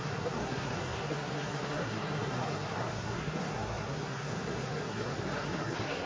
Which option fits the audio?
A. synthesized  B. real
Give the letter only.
A